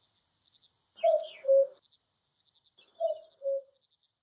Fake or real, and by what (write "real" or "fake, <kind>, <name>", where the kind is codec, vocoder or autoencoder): real